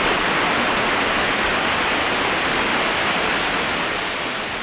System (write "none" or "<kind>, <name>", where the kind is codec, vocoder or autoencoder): none